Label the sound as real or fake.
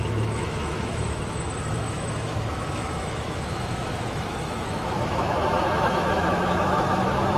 fake